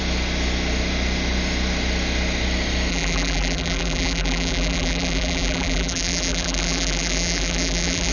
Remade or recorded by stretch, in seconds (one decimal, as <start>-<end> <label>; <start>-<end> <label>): 0.0-2.9 recorded; 2.9-8.1 remade